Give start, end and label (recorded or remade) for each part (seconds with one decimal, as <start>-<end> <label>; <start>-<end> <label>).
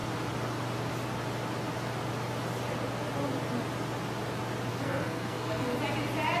0.0-4.7 recorded; 4.7-5.8 remade; 5.8-6.4 recorded